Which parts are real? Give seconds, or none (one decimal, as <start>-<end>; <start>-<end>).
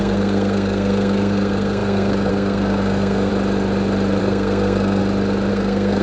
3.3-4.2; 5.0-5.5